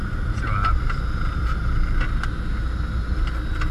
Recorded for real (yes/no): yes